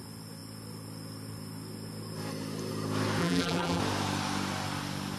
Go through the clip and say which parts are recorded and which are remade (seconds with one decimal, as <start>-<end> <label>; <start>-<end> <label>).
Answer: 0.0-3.2 recorded; 3.2-3.8 remade; 3.8-5.2 recorded